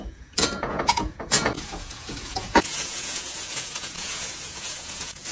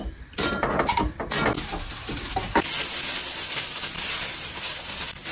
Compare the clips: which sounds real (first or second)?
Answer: second